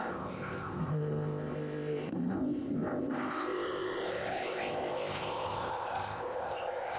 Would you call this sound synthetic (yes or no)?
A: yes